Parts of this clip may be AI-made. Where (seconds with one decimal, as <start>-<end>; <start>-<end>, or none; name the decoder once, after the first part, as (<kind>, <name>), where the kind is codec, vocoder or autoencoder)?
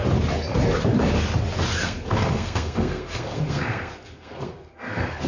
1.8-5.3 (codec, SNAC)